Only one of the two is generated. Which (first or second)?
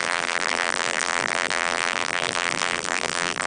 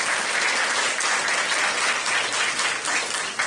first